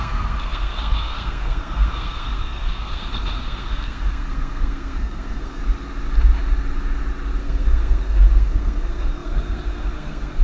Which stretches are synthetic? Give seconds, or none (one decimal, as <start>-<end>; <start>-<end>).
0.0-5.6; 7.4-10.4